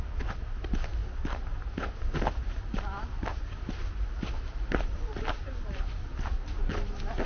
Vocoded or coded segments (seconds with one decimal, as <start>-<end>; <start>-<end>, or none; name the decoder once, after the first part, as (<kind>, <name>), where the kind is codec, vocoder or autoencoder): none